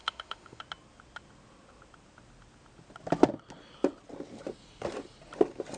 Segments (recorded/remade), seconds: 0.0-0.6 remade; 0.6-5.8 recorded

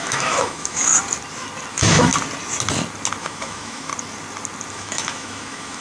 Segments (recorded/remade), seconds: 0.0-0.9 remade; 0.9-1.7 recorded; 1.7-2.1 remade; 2.1-3.2 recorded; 3.2-3.9 remade; 3.9-4.7 recorded; 4.7-5.8 remade